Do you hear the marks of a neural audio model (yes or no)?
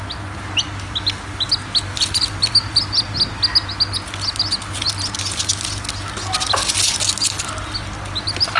no